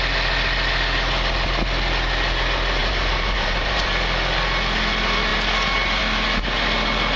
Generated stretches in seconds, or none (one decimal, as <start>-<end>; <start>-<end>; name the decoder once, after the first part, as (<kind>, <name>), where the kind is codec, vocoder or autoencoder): 2.8-3.9 (vocoder, BigVGAN v2)